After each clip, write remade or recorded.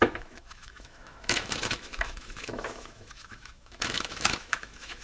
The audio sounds remade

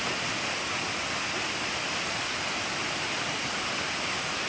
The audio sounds recorded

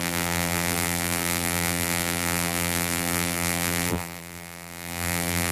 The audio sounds remade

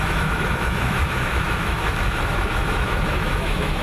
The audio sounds remade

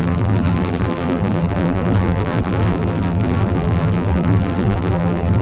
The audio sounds remade